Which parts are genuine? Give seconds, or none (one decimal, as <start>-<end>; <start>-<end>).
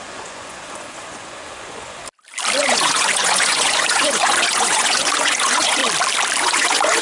2.0-2.6; 5.8-6.4